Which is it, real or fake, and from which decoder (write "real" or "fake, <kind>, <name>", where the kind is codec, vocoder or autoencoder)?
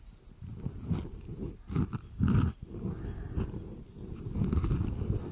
real